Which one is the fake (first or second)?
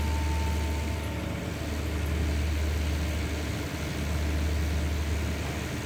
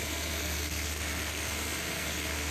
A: second